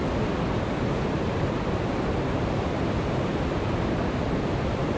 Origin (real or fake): real